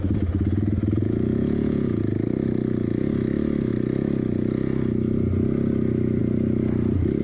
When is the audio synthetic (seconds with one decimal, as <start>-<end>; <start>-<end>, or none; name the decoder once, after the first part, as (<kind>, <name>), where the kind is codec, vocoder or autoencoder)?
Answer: 1.0-2.0 (vocoder, Vocos)